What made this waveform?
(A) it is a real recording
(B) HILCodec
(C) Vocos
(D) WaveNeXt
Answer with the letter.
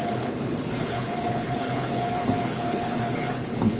B